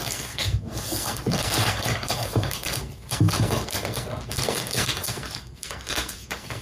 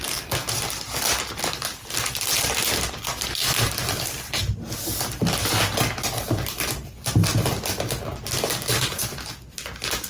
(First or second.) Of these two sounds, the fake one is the first